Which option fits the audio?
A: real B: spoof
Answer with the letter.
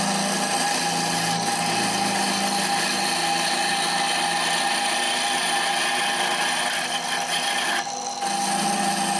A